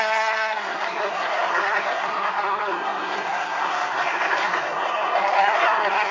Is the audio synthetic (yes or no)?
yes